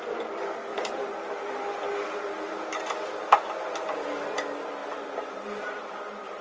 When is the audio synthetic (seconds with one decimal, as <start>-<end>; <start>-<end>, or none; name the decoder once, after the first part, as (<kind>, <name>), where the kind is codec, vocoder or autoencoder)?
0.7-1.3 (vocoder, BigVGAN v2); 4.8-6.4